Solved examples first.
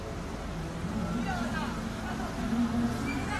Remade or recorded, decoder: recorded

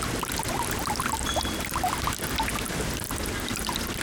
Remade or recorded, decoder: remade, vocoder, BigVGAN v2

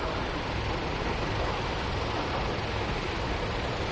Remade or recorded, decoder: recorded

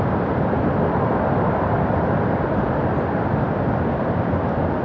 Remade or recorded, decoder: remade, vocoder, BigVGAN v2